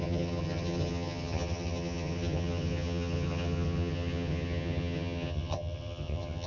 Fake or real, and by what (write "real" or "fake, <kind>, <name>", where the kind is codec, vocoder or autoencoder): fake, vocoder, HiFi-GAN